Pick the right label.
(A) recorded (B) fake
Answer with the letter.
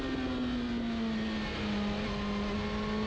A